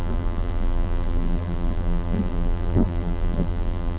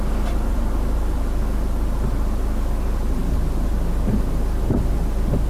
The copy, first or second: first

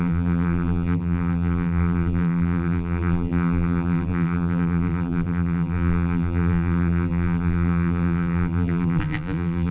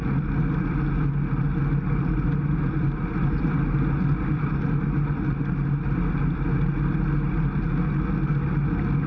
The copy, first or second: first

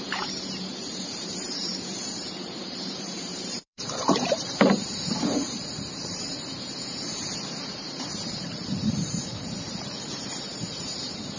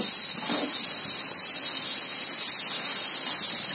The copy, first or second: first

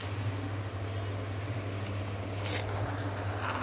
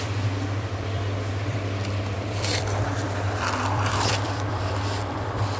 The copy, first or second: second